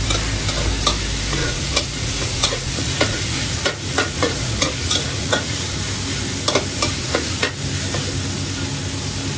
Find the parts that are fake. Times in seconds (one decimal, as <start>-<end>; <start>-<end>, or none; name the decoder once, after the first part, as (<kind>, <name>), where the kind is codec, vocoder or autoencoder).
1.4-5.7 (vocoder, Vocos); 7.0-7.5